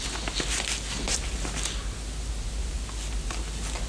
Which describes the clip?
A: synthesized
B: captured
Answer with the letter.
B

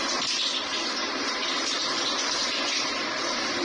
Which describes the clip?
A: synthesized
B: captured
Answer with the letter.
A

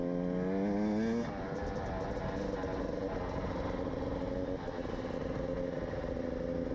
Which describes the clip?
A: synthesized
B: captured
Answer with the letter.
B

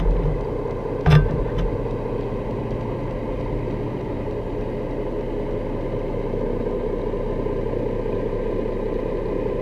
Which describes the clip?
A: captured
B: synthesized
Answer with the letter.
A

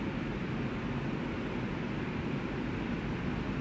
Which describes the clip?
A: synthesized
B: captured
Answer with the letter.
A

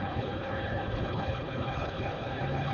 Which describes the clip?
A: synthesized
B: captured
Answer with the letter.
A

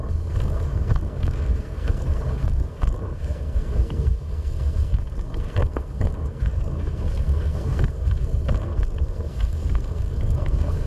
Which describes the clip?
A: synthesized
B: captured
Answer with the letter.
A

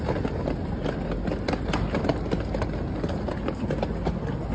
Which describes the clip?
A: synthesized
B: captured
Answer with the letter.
B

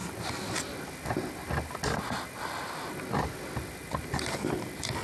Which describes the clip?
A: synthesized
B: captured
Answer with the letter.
B